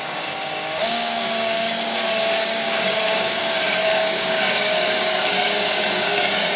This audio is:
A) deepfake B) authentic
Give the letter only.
A